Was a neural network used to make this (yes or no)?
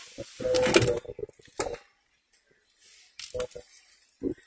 no